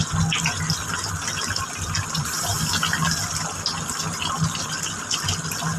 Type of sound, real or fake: real